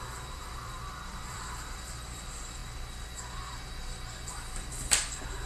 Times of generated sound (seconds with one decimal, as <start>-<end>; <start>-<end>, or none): 0.0-2.6; 4.5-5.5